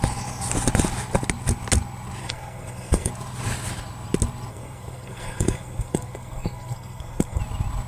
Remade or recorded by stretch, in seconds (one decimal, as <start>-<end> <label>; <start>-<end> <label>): 0.0-2.2 recorded; 2.2-3.1 remade; 3.1-4.5 recorded; 4.5-7.4 remade; 7.4-7.9 recorded